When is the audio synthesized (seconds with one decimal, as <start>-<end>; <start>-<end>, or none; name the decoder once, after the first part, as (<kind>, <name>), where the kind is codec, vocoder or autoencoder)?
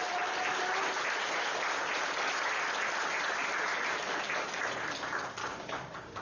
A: 5.4-6.2 (codec, DAC)